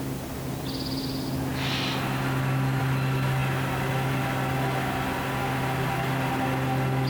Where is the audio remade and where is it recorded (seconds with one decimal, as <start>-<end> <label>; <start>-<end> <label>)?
0.0-7.1 recorded